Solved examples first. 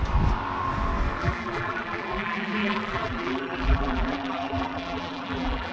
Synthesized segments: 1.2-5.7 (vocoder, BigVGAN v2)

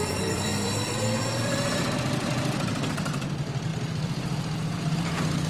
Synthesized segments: 0.0-3.7 (vocoder, BigVGAN v2)

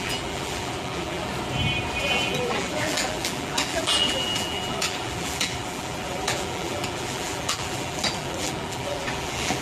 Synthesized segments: 0.0-1.3 (vocoder, BigVGAN v2); 2.0-9.6

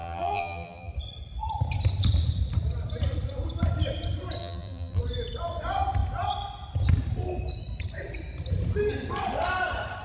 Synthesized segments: 0.0-0.9 (vocoder, BigVGAN v2); 4.4-5.0

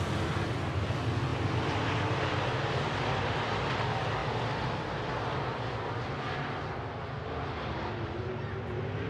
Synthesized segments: 4.2-7.5 (vocoder, BigVGAN v2)

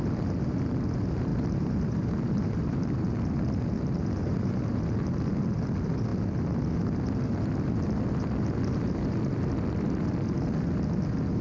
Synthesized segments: 1.3-3.1 (vocoder, BigVGAN v2); 4.2-4.8

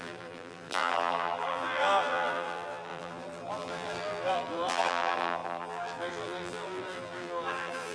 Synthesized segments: 0.0-7.9 (vocoder, BigVGAN v2)